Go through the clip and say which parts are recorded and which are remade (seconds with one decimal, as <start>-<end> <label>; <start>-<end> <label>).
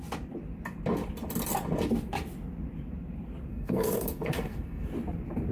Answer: 0.0-3.5 recorded; 3.5-4.9 remade; 4.9-5.5 recorded